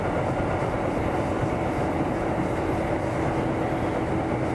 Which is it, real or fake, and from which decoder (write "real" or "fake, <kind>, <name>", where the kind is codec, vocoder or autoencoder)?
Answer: real